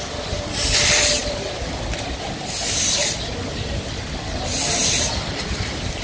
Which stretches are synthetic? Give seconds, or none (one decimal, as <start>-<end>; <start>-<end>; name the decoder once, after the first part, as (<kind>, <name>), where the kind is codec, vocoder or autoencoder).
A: none

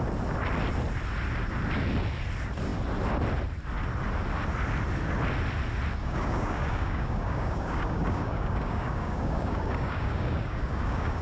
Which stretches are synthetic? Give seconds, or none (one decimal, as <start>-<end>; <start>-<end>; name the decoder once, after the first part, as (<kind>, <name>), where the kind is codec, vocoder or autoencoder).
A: 6.0-11.2 (codec, DAC)

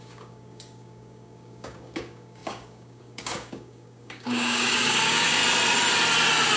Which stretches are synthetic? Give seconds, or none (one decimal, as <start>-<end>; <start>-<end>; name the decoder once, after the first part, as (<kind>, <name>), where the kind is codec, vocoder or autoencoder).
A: 0.0-5.4 (codec, DAC)

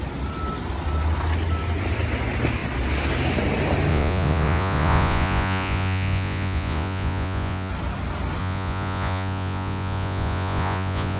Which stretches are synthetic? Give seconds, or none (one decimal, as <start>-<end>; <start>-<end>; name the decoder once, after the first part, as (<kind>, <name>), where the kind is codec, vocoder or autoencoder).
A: 3.9-7.7 (vocoder, Vocos); 8.4-11.2

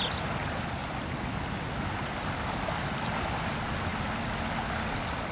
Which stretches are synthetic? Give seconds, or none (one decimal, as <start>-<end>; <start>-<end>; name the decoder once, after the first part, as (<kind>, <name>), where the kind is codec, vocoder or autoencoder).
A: none

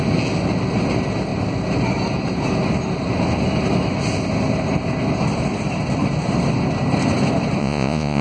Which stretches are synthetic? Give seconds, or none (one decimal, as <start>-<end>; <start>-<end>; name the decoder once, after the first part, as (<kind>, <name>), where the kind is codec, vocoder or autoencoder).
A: 7.6-8.2 (vocoder, Vocos)

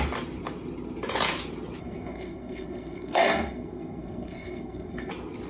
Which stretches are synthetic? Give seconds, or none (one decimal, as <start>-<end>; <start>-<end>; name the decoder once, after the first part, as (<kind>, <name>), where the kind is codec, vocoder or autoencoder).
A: 1.8-5.1 (codec, SNAC)